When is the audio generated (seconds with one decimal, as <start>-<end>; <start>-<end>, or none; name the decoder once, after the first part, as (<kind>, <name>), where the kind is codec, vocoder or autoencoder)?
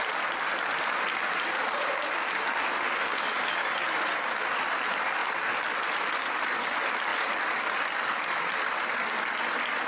none